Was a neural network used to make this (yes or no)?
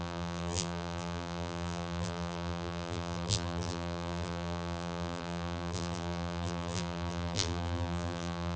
yes